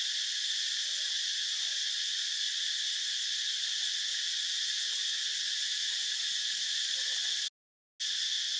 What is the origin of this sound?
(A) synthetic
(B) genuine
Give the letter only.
B